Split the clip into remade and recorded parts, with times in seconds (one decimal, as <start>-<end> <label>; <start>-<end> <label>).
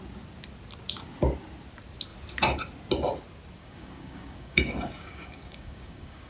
0.0-3.6 recorded; 3.6-6.3 remade